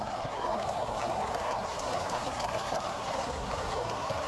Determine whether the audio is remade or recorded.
remade